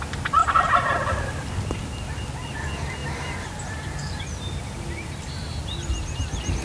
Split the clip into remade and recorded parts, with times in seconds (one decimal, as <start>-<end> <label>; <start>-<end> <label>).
0.0-3.0 recorded; 3.0-4.2 remade; 4.2-6.6 recorded